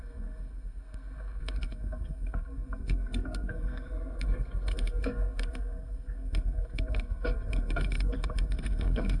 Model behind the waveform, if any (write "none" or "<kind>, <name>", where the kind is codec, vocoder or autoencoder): codec, SNAC